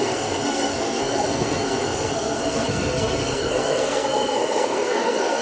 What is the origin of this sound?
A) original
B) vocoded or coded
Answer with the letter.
B